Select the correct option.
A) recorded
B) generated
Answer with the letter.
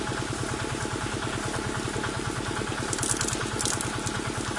A